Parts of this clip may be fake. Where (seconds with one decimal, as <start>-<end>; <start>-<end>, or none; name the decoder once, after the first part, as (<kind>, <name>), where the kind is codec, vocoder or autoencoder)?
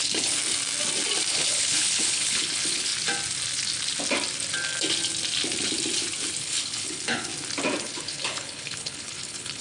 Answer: 0.0-0.4 (codec, HILCodec); 1.3-2.9; 6.4-7.3; 7.8-9.6